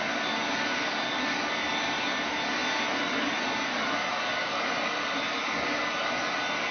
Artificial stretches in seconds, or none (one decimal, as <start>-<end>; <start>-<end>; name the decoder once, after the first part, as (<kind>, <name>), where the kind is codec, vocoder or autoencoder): none